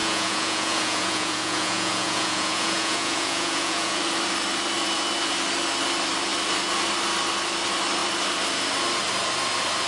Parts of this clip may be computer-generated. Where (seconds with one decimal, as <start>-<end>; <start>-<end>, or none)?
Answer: 0.0-4.0